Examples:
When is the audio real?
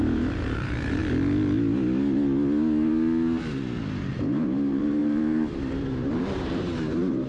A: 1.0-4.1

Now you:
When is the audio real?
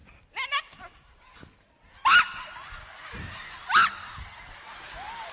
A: 0.0-3.2; 3.8-4.7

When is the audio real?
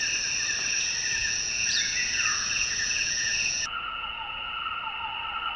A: 0.0-1.2; 4.6-5.6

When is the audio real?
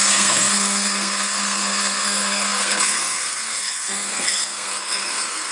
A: none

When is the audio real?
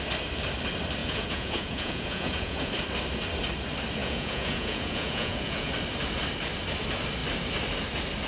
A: 0.0-1.0; 2.7-4.0; 5.7-8.3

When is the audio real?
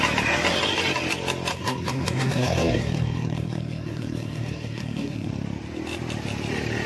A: 0.0-1.5; 5.3-6.9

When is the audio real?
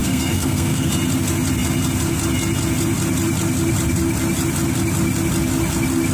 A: 0.9-6.1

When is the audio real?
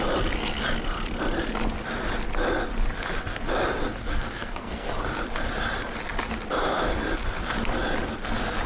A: 0.0-4.1; 4.9-8.7